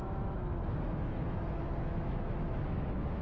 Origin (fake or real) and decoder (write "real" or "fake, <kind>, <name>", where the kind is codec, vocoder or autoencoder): fake, autoencoder, DAC-VAE